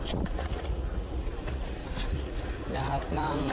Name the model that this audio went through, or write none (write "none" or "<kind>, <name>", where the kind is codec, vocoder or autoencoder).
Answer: vocoder, Vocos